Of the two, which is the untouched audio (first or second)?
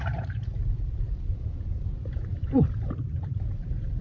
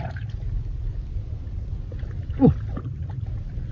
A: second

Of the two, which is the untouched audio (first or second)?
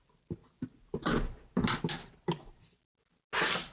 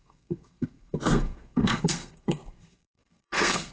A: first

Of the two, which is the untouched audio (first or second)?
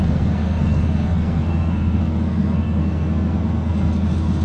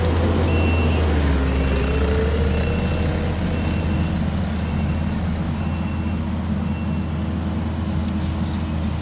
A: second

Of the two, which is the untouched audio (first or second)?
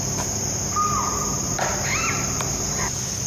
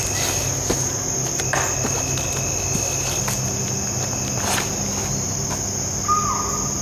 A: second